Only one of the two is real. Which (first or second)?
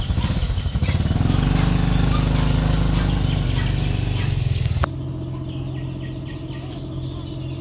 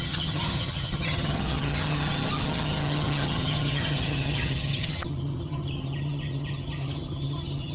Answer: first